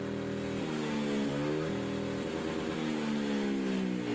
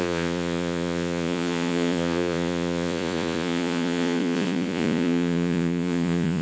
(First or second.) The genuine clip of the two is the first